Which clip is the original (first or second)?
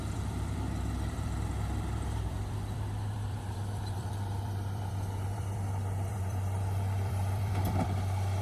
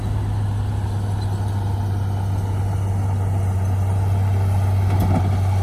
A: second